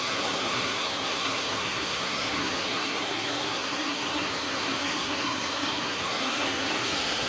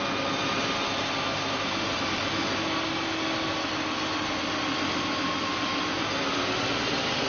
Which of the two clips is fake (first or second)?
first